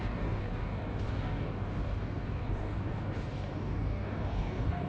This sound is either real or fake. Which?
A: fake